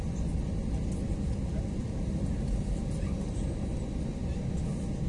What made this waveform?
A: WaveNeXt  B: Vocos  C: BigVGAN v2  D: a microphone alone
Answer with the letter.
D